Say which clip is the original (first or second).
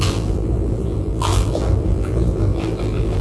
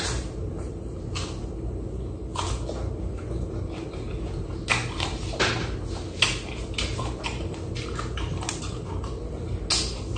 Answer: second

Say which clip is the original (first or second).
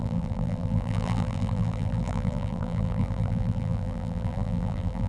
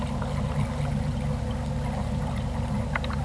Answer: second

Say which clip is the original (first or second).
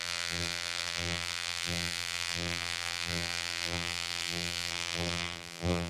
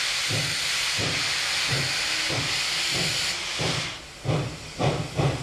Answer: second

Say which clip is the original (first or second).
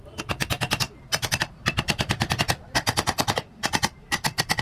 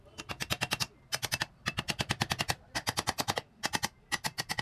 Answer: second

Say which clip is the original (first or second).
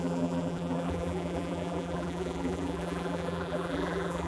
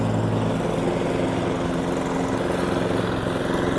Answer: second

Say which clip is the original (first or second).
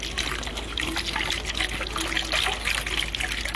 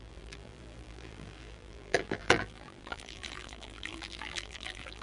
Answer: first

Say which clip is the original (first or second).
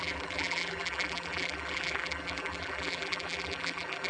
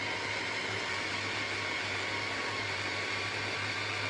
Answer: second